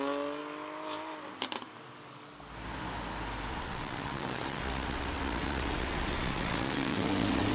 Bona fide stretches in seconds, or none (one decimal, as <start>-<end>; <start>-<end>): 0.0-3.5